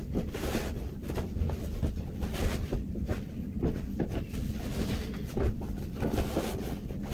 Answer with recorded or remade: recorded